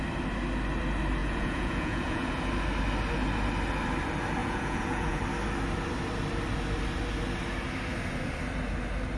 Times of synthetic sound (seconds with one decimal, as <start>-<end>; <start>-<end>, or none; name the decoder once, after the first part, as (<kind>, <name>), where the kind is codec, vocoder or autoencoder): 1.2-2.5 (vocoder, Vocos); 4.4-5.2